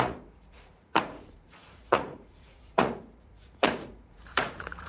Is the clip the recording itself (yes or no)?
no